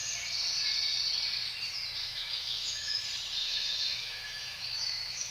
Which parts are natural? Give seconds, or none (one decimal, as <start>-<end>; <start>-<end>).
0.0-2.0; 3.0-3.4